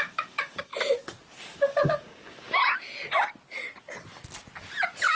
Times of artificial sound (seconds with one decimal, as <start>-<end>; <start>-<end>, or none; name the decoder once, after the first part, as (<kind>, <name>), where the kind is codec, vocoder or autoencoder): 0.0-0.7 (codec, DAC); 1.4-2.6